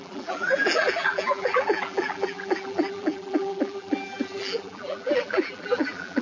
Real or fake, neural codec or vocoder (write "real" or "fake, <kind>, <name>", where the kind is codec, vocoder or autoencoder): fake, vocoder, BigVGAN v2